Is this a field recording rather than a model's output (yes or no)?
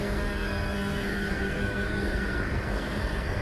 no